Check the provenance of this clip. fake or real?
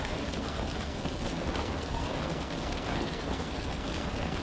fake